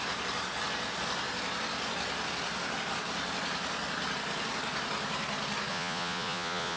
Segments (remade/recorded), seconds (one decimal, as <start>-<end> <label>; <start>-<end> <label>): 0.0-5.7 recorded; 5.7-6.8 remade